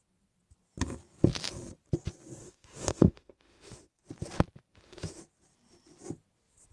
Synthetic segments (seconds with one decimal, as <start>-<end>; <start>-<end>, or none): 2.4-3.9; 4.7-5.2